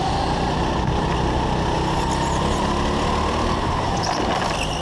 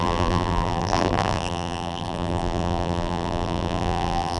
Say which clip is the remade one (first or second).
second